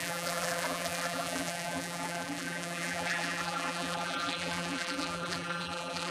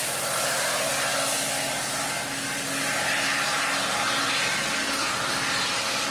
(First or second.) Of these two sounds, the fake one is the first